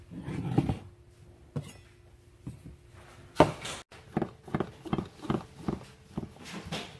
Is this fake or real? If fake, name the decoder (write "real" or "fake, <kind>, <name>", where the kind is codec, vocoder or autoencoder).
real